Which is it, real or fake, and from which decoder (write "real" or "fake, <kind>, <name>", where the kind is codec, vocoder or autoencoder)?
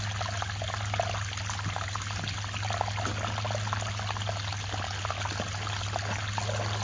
real